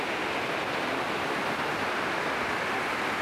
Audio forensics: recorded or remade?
recorded